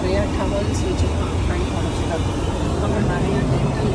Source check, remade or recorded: recorded